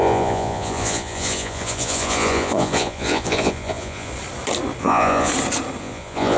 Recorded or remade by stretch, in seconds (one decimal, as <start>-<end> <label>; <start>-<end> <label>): 0.0-4.1 remade; 4.1-4.8 recorded; 4.8-5.3 remade; 5.3-5.8 recorded; 5.8-6.4 remade